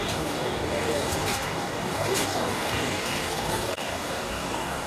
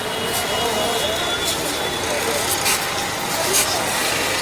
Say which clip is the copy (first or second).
first